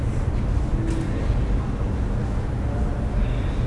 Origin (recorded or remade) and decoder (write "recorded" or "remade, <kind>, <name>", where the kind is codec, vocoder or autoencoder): recorded